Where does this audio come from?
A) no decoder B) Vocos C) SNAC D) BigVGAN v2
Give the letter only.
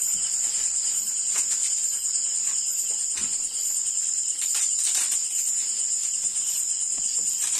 A